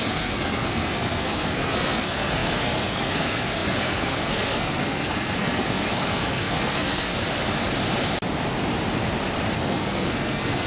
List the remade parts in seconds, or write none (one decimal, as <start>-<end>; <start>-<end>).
0.0-7.1; 9.5-10.7